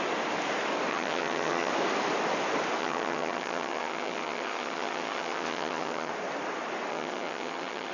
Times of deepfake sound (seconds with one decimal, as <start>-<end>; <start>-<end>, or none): 0.9-1.7; 2.8-6.1; 6.9-7.9